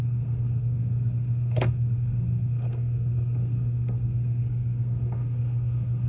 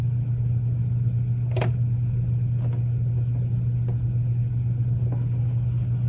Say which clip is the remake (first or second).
first